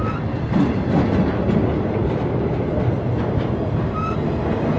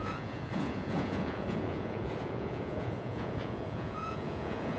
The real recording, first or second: first